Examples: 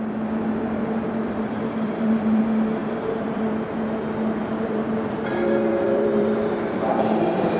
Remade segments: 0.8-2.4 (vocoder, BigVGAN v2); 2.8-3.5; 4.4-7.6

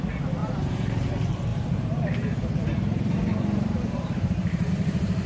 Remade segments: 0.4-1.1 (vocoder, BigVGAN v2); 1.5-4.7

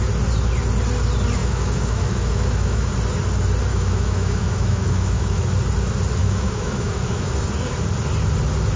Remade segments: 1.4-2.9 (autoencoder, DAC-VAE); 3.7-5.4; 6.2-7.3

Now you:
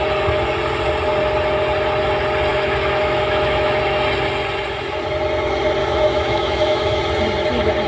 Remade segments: 2.5-3.8 (autoencoder, DAC-VAE); 5.8-7.0